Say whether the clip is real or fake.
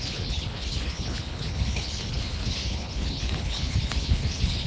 fake